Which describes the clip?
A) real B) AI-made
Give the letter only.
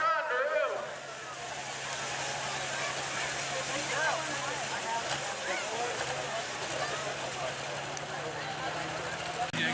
A